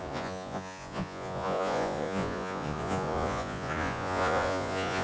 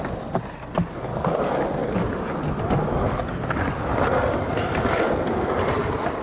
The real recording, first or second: second